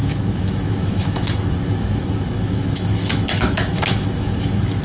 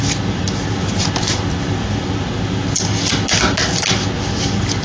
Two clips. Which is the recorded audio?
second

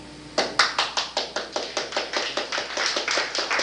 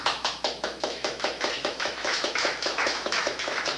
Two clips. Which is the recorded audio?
first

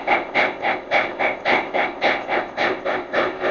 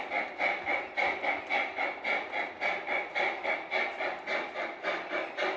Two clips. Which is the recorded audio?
second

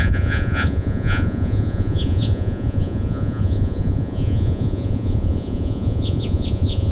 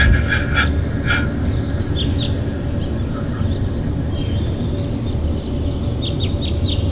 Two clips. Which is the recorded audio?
second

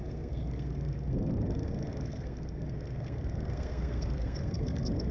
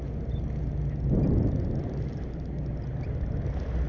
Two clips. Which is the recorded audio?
second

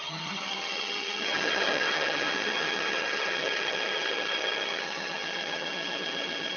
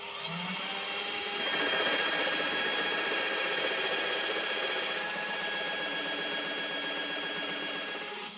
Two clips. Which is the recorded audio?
second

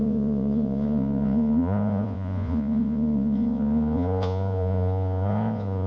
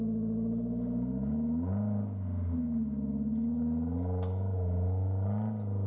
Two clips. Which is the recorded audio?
second